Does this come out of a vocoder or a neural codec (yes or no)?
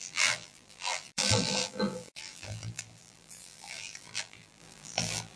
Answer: yes